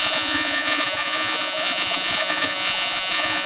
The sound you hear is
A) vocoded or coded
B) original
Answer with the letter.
A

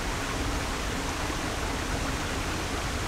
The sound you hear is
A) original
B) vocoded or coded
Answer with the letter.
A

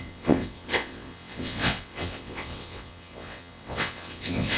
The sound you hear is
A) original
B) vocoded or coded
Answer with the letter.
B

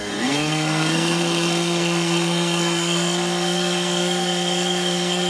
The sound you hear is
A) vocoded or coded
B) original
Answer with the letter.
A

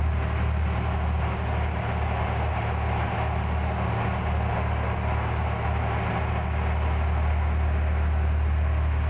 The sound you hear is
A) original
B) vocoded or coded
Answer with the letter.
A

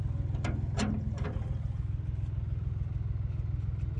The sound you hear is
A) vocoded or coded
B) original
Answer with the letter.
B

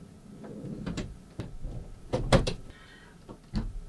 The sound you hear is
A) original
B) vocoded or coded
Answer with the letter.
A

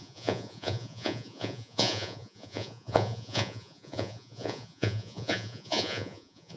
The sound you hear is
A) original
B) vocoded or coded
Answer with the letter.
B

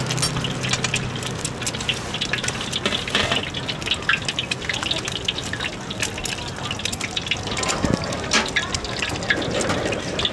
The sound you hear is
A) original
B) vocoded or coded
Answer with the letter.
A